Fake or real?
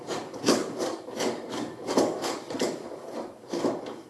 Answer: fake